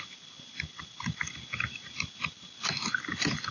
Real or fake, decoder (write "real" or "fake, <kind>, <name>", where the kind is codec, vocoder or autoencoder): real